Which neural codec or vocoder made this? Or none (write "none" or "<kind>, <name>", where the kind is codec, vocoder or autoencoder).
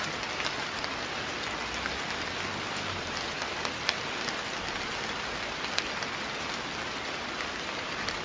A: none